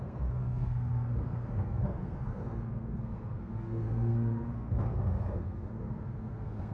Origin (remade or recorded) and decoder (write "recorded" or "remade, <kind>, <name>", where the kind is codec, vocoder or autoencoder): remade, codec, SNAC